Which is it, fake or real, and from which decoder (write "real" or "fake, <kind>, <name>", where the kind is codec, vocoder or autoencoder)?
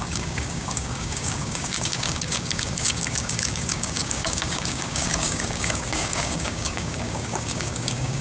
fake, codec, DAC